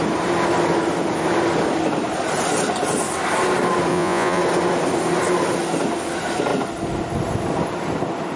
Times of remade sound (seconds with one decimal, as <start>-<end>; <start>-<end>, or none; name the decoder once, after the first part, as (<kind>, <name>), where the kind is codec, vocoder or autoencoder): 3.9-4.4 (vocoder, Vocos)